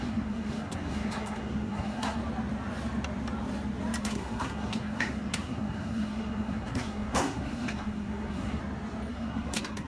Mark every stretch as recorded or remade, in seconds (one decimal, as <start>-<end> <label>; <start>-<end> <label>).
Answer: 0.0-2.2 remade; 2.2-4.0 recorded; 4.0-8.6 remade; 8.6-9.1 recorded; 9.1-9.9 remade